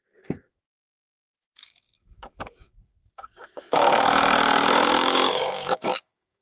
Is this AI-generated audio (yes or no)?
yes